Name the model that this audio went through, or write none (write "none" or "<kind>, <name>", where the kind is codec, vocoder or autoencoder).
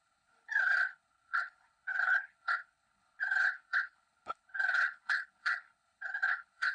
codec, HILCodec